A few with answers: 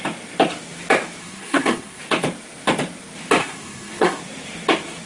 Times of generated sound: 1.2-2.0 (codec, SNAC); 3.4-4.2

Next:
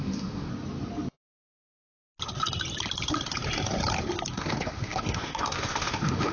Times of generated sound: 0.0-0.5 (autoencoder, DAC-VAE); 4.3-6.3

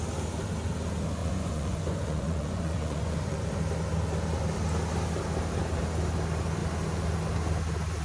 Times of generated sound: 1.2-3.5 (vocoder, Vocos)

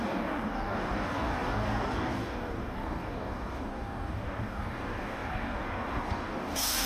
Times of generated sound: 0.0-6.9 (codec, DAC)

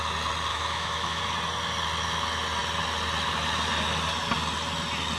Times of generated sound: 0.5-1.2 (autoencoder, DAC-VAE)

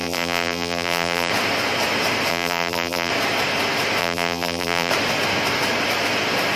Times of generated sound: 0.0-1.3 (vocoder, BigVGAN v2); 2.3-3.1; 4.0-4.9